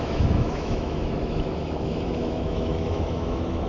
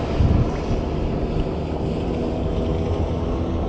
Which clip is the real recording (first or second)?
second